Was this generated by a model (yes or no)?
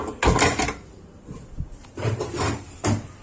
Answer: no